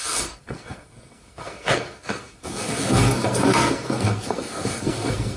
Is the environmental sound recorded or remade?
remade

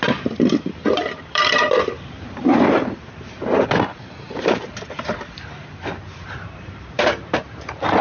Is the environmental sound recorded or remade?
remade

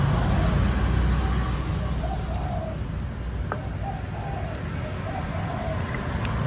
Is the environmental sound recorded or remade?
recorded